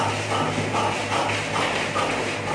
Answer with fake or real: real